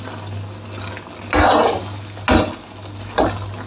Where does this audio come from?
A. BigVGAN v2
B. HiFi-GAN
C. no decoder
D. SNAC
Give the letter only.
C